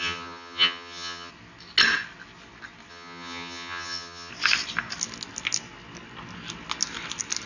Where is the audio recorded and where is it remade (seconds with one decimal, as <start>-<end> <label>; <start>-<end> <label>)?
0.0-1.3 remade; 1.3-2.9 recorded; 2.9-4.3 remade; 4.3-7.5 recorded